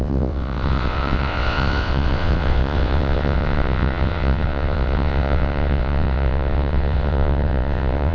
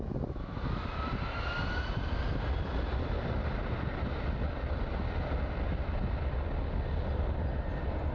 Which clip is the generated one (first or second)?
first